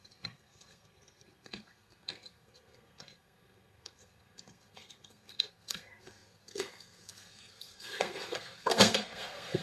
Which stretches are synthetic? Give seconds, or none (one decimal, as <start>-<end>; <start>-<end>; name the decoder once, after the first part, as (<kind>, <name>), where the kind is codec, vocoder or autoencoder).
0.0-9.6 (codec, SNAC)